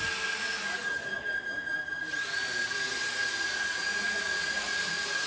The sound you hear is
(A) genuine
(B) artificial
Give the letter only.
A